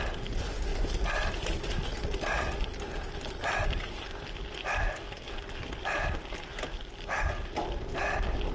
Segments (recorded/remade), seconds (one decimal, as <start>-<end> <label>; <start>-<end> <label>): 0.0-8.5 recorded